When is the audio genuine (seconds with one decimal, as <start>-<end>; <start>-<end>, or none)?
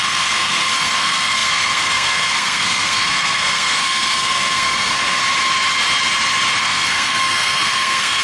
5.2-6.6